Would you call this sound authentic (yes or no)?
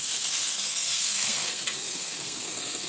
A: no